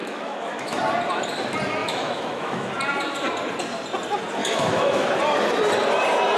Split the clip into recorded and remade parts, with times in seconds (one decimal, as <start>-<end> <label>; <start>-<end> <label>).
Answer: 0.0-0.8 remade; 0.8-1.8 recorded; 1.8-2.7 remade; 2.7-4.4 recorded; 4.4-5.1 remade; 5.1-6.4 recorded